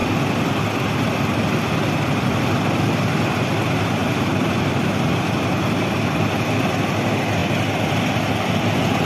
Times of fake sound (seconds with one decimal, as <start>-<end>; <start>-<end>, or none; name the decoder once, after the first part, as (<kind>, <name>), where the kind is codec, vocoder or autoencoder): 4.0-5.1 (vocoder, BigVGAN v2)